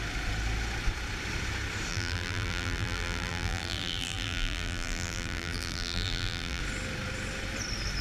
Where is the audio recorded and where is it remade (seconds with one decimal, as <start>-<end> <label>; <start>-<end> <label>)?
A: 0.0-1.9 recorded; 1.9-6.6 remade; 6.6-8.0 recorded